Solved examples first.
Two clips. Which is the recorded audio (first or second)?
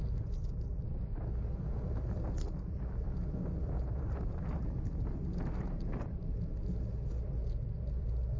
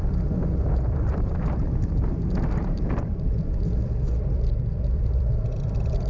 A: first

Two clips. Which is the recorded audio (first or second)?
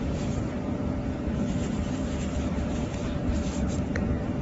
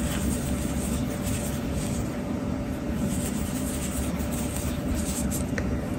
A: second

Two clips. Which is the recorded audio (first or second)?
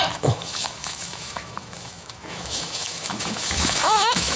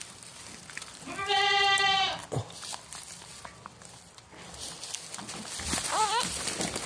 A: second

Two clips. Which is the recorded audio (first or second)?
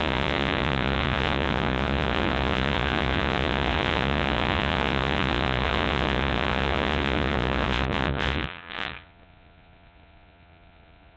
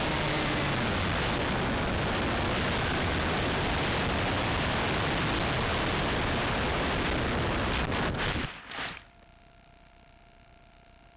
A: second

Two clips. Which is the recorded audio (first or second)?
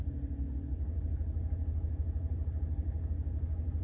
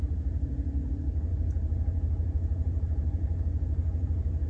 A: first